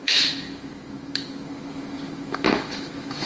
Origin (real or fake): fake